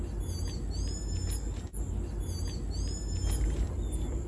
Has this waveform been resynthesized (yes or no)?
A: no